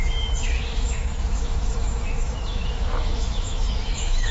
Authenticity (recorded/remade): remade